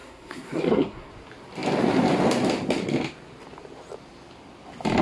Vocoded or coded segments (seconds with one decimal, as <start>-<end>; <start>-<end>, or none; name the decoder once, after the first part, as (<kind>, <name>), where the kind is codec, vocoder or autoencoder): 0.0-1.1 (codec, SNAC)